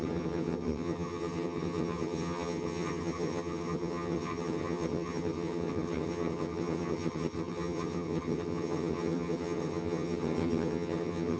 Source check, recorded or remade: remade